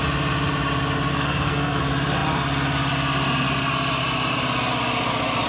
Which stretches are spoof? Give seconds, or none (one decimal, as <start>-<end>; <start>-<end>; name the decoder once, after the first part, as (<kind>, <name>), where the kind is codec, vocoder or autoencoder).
1.1-1.8 (codec, SNAC)